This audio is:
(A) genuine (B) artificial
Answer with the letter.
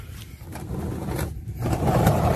B